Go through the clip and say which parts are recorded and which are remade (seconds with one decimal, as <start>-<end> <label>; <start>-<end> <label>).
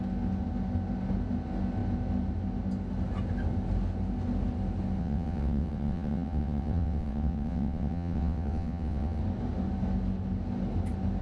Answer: 0.0-5.0 recorded; 5.0-9.2 remade; 9.2-11.2 recorded